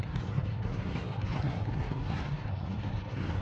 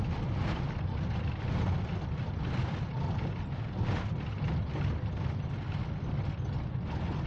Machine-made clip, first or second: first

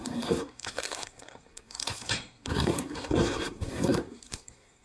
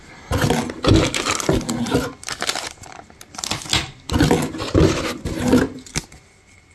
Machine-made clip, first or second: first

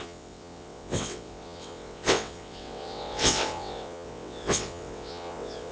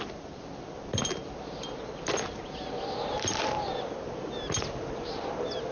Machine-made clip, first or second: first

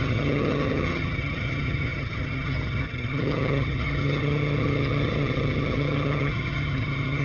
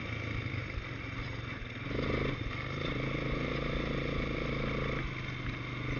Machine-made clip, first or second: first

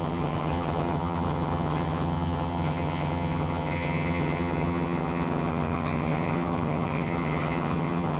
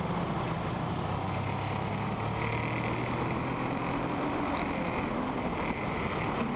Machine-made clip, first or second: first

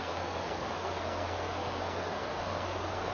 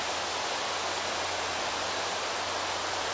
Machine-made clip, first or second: first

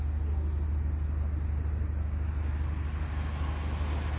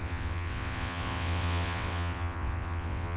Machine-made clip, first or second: second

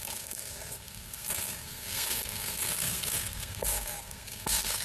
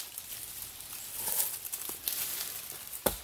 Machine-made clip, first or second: first